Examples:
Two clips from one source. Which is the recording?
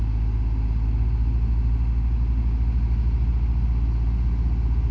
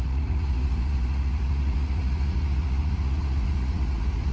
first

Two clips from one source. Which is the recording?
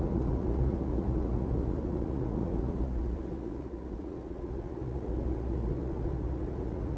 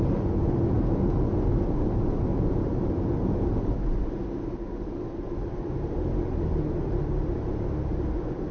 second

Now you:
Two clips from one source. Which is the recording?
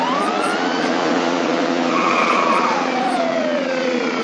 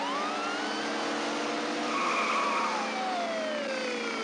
second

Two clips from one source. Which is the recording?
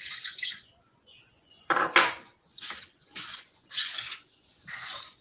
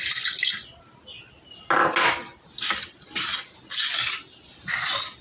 second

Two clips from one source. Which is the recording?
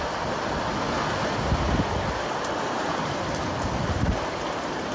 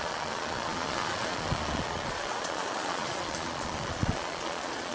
first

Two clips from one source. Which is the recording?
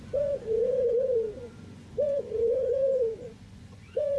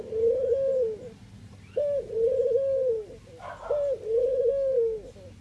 second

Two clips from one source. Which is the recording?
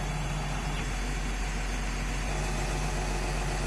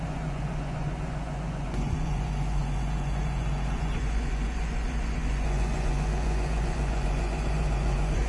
first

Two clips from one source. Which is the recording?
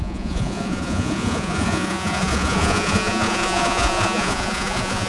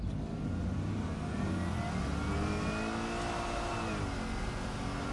second